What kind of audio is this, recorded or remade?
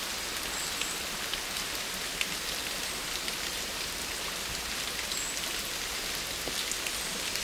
recorded